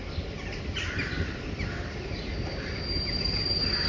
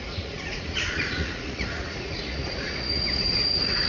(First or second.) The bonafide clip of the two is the first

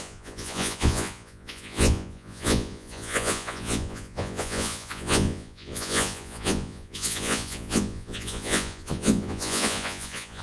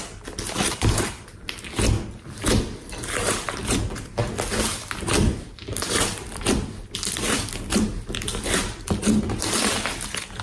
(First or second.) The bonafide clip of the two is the second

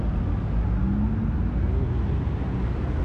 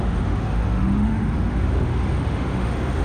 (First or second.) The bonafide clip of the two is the first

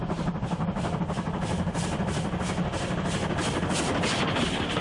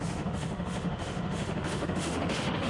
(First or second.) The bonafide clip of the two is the first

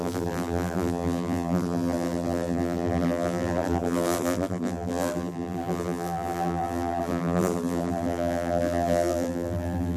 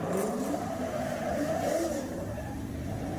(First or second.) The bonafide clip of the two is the second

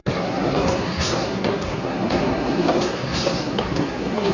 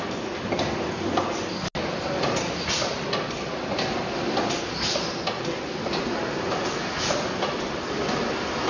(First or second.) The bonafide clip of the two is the second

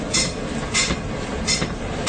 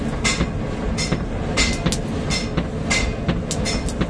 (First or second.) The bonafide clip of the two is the second